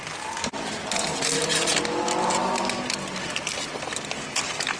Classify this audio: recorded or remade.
recorded